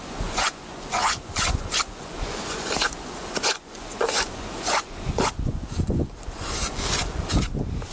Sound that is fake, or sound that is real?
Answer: fake